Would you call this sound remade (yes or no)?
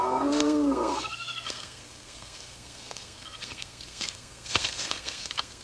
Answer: yes